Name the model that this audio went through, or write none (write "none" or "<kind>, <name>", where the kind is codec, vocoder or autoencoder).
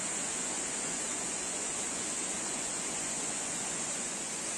vocoder, Vocos